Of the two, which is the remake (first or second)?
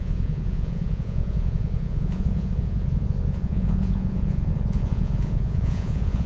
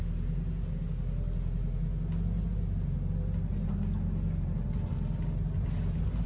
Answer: first